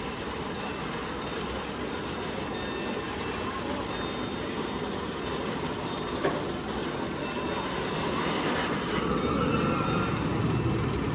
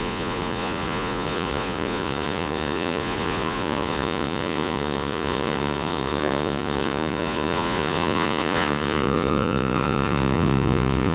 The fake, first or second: second